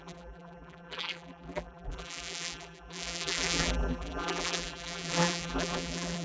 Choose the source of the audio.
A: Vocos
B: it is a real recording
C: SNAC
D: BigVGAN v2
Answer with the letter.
D